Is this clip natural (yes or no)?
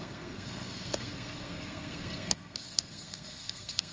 no